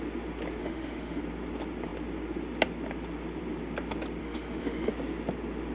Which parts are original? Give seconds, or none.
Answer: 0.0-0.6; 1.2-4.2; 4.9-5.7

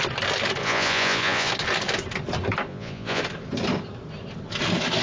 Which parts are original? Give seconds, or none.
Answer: 0.0-0.6; 1.5-2.7; 3.2-5.0

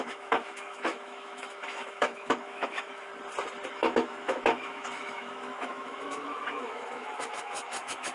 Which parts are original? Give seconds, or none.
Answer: 3.1-3.7

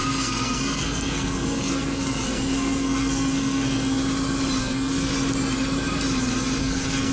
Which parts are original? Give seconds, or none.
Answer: 4.0-4.6; 5.1-6.6

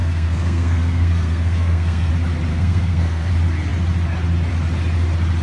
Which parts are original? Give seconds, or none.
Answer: 2.1-2.5; 3.3-5.4

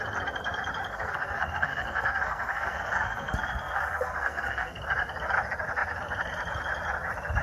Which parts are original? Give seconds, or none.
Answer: 0.0-0.9; 4.8-7.4

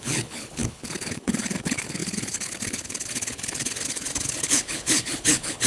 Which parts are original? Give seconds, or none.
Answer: none

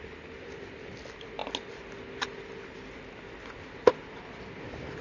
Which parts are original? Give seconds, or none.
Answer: 0.0-5.0